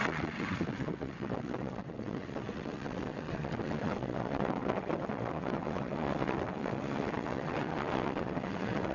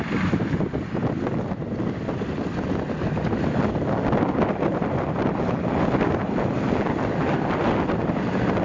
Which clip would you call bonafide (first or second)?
second